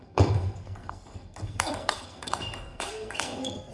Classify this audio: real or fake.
fake